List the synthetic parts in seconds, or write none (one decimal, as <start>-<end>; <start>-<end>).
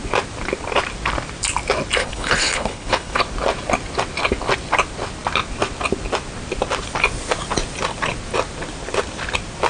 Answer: 2.0-3.2